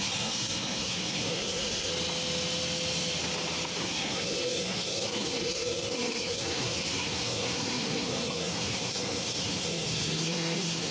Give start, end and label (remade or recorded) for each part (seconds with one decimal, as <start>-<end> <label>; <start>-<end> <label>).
0.0-1.9 remade; 1.9-3.8 recorded; 3.8-10.9 remade